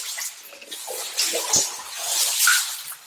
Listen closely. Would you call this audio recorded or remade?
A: recorded